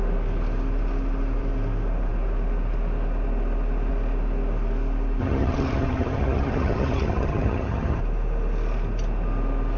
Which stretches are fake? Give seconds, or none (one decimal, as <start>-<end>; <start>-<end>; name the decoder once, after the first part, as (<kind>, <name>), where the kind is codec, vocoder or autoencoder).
5.2-8.0 (vocoder, HiFi-GAN)